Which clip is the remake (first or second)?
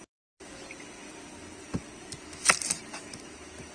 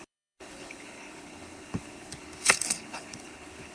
second